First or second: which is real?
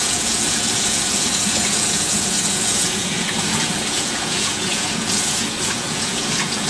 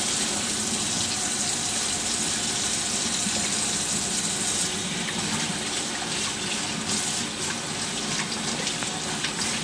second